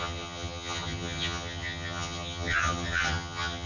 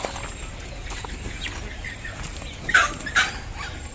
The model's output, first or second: first